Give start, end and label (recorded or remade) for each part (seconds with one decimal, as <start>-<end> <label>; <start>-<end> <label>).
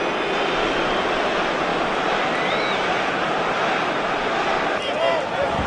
0.0-1.7 recorded; 1.7-5.0 remade; 5.0-5.7 recorded